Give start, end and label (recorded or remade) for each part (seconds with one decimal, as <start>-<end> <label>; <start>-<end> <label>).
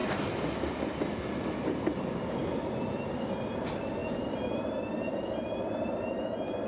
0.0-0.7 remade; 0.7-4.0 recorded; 4.0-4.6 remade; 4.6-5.1 recorded; 5.1-5.7 remade; 5.7-6.7 recorded